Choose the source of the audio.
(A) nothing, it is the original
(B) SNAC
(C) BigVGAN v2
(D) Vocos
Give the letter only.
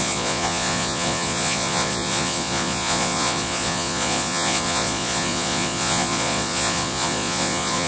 D